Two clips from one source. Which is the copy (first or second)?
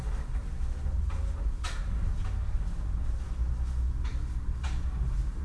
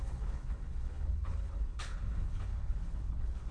second